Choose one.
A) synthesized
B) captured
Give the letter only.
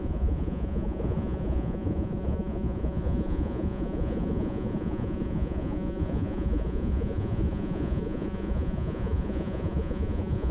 A